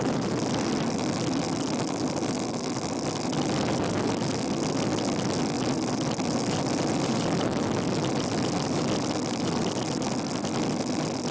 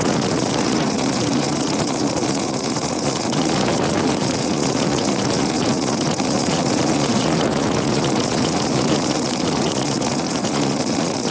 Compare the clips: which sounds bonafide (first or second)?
first